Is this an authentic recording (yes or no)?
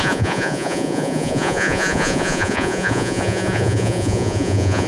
no